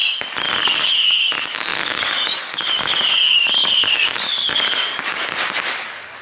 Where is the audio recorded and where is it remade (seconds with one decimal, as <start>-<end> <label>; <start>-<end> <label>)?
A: 0.0-0.6 recorded; 0.6-6.2 remade